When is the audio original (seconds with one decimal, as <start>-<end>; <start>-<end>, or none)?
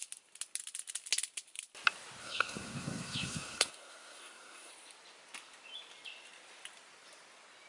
0.0-2.2; 4.7-7.7